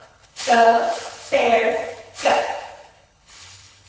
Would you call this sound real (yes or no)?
no